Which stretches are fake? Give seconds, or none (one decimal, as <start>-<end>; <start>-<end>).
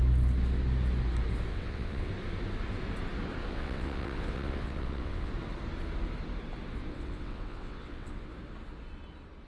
1.5-2.1; 3.4-5.3; 6.9-8.3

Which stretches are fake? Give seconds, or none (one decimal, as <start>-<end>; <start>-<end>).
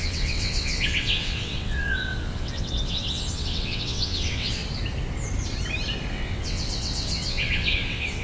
0.0-4.6; 6.1-8.2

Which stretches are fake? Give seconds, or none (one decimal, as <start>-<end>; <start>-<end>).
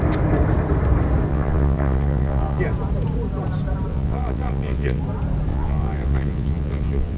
1.3-2.6; 3.9-5.0; 5.5-7.2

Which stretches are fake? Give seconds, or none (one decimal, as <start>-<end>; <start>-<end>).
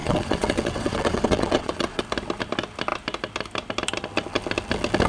0.0-2.0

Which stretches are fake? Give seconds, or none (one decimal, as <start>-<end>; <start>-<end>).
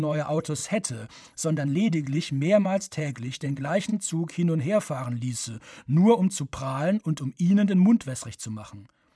0.0-0.6; 1.1-3.9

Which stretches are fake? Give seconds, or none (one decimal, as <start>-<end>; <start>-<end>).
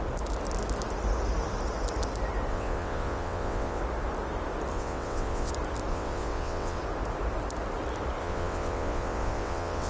2.5-3.8; 4.7-5.5; 5.9-6.8; 8.2-9.9